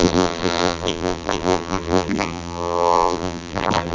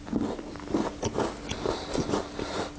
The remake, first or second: first